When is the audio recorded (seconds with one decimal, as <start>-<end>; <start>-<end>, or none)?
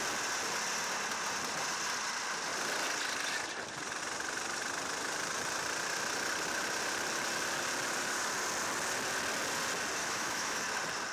0.0-10.0; 10.6-11.1